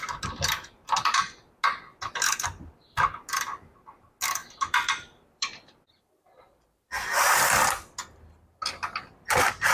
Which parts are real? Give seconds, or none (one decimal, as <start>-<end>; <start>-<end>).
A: 0.0-4.4; 8.6-9.7